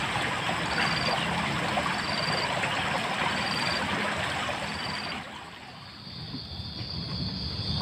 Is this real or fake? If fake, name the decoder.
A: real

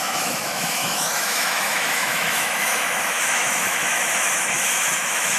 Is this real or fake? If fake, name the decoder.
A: fake, autoencoder, DAC-VAE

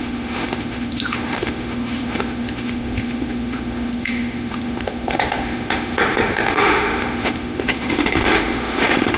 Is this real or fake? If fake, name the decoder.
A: fake, autoencoder, DAC-VAE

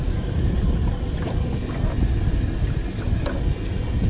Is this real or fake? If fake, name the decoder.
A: real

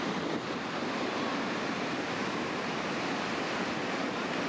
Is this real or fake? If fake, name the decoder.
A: real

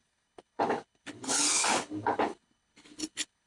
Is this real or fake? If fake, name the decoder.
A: fake, codec, HILCodec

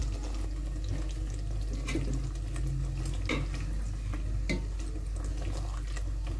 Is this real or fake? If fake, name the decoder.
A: real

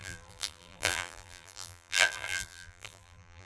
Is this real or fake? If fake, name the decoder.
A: fake, vocoder, BigVGAN v2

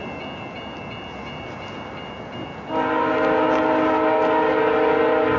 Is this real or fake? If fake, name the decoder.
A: real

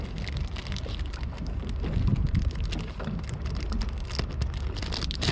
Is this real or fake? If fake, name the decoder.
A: real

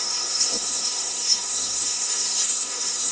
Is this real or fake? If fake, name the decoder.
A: fake, codec, SNAC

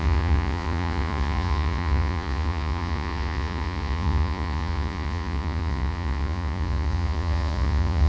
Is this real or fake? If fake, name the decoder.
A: fake, vocoder, Vocos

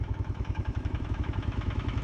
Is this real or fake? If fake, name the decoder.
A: fake, autoencoder, DAC-VAE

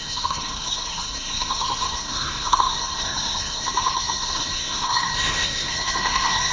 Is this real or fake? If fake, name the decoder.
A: fake, codec, SNAC